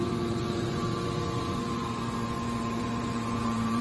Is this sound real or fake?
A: fake